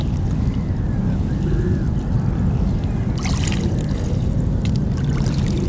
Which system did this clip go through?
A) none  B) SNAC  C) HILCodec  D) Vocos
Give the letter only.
A